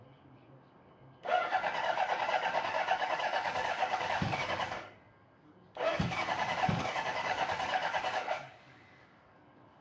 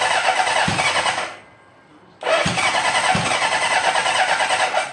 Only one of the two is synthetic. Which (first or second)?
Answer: first